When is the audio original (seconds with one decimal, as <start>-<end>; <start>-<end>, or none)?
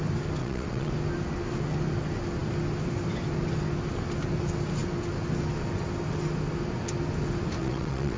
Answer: 0.0-0.4; 0.9-7.6